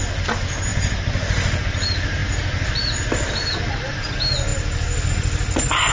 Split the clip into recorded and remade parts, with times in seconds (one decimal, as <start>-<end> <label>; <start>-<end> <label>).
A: 0.0-5.9 recorded